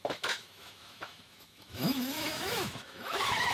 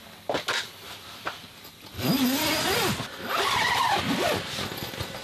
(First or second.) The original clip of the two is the second